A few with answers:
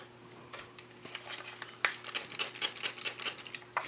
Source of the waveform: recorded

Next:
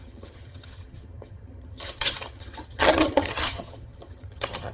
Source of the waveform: remade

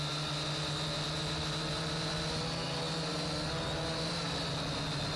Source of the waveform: recorded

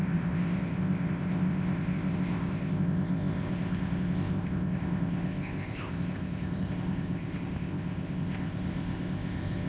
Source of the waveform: remade